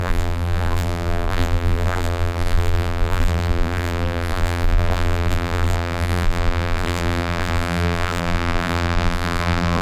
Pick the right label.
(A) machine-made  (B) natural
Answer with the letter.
A